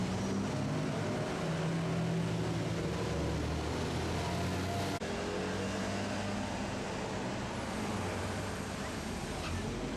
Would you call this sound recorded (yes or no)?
yes